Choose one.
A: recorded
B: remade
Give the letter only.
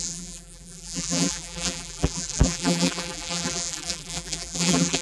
B